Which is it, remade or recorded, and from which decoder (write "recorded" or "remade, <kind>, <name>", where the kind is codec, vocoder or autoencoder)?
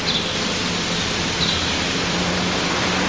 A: recorded